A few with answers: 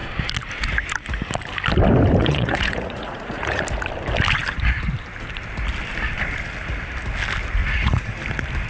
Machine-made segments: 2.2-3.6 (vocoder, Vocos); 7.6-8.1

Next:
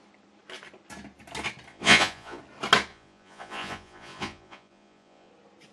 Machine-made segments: 1.7-2.4 (vocoder, Vocos); 2.9-5.3

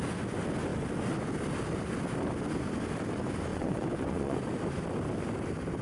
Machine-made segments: 3.5-4.5 (vocoder, Vocos)

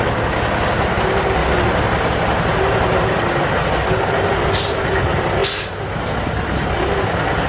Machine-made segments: none

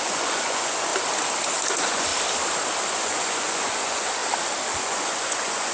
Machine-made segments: 0.0-0.9 (vocoder, Vocos); 1.7-2.1; 2.9-4.2; 4.8-5.7

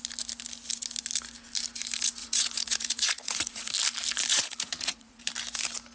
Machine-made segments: 2.2-3.7 (vocoder, Vocos); 4.3-5.2

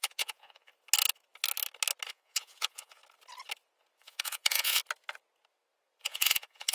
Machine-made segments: 0.0-0.7 (vocoder, Vocos); 2.1-3.0; 4.0-4.8; 6.0-6.7

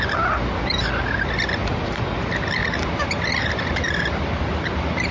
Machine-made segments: none